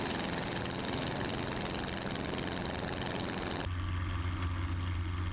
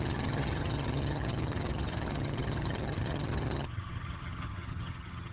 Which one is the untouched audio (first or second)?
first